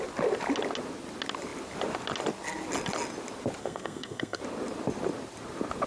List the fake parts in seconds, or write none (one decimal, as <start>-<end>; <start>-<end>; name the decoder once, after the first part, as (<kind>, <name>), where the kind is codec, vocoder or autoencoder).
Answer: 3.6-4.4 (codec, SNAC)